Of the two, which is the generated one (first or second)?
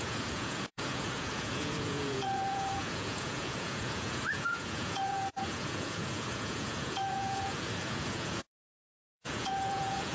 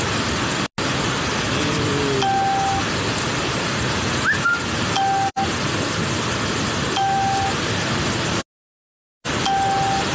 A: first